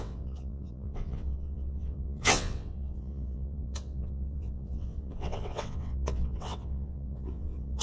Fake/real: fake